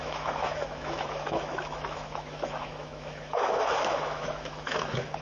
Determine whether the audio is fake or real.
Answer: fake